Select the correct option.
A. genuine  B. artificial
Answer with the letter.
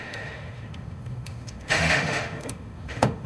B